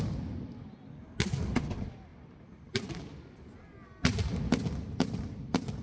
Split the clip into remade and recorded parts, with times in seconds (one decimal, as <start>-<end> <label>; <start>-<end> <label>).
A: 0.0-5.8 recorded